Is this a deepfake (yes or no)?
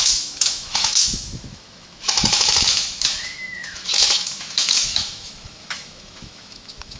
yes